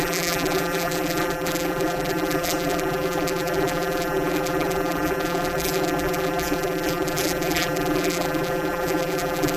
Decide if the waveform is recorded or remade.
remade